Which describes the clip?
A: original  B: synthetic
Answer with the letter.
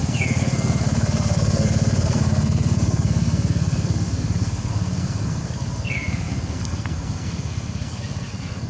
B